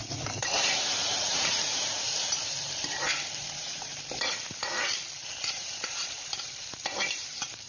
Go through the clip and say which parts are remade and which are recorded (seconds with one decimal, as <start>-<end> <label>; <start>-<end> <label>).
0.0-4.3 remade; 4.3-5.2 recorded; 5.2-7.7 remade